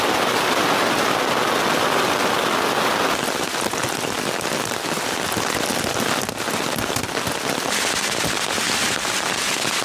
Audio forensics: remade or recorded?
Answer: recorded